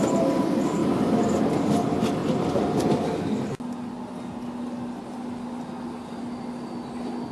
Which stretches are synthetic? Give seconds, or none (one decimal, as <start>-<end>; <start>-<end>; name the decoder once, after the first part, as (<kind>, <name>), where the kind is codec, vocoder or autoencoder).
none